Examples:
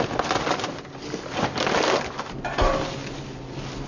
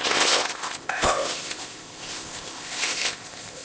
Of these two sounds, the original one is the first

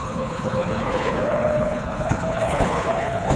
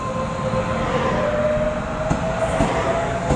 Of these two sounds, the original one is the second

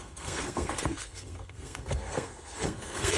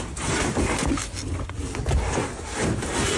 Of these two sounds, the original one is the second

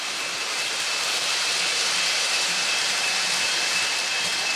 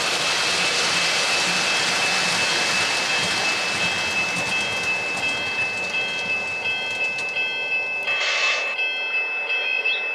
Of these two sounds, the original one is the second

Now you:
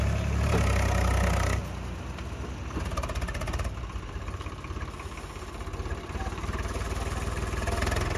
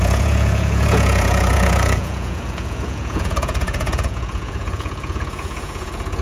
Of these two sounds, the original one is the first